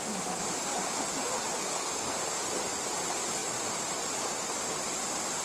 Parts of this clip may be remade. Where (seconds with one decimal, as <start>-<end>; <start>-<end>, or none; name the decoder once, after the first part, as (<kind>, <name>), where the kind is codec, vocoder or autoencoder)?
1.6-2.2 (codec, SNAC)